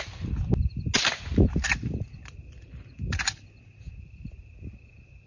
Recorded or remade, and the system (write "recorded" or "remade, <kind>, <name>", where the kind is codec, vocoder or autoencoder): recorded